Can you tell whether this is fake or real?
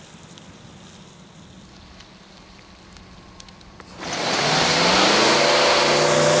real